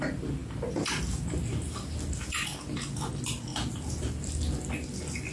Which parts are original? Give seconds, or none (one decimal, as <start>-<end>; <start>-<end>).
0.0-5.3